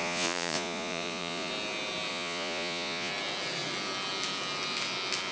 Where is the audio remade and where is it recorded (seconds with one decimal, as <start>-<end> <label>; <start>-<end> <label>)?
0.0-1.5 remade; 1.5-2.1 recorded; 2.1-3.1 remade; 3.1-5.3 recorded